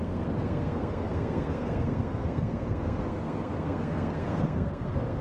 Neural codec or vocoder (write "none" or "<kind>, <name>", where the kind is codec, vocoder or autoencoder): codec, SNAC